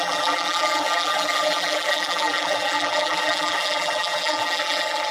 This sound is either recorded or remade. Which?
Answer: remade